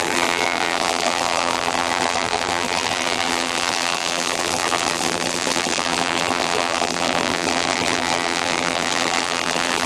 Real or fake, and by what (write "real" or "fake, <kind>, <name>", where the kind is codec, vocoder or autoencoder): fake, vocoder, BigVGAN v2